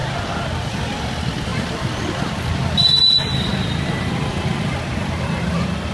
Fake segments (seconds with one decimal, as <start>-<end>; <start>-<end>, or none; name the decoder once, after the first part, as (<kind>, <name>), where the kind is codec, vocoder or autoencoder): 1.0-5.9 (vocoder, BigVGAN v2)